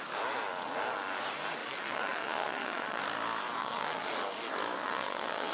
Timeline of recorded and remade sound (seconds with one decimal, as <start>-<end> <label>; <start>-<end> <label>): 0.0-1.6 recorded; 1.6-3.0 remade; 3.0-3.6 recorded; 3.6-4.1 remade; 4.1-4.8 recorded; 4.8-5.5 remade